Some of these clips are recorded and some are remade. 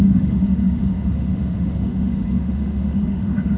remade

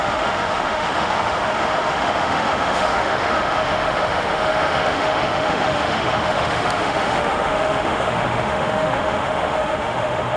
remade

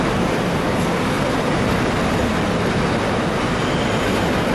recorded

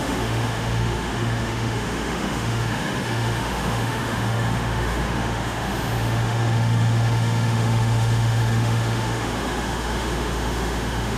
remade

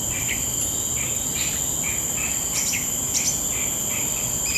recorded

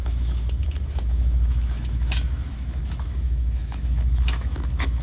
remade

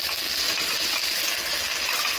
recorded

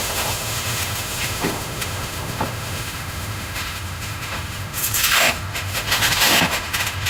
remade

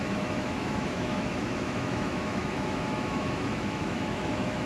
remade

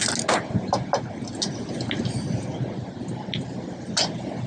recorded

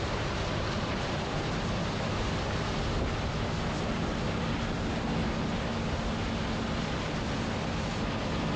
recorded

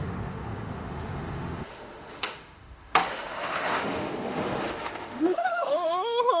remade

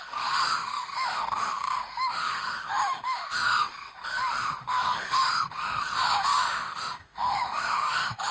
remade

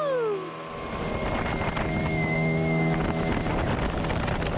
recorded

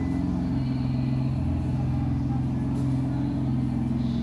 recorded